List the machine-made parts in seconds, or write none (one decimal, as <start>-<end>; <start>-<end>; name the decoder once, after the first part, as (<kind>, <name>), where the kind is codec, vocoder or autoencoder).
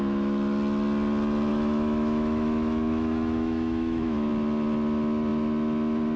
1.5-4.3 (autoencoder, DAC-VAE)